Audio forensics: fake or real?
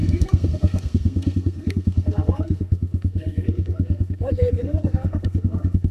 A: fake